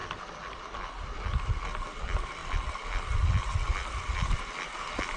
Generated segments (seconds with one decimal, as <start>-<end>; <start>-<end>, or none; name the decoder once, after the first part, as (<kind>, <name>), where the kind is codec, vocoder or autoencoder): none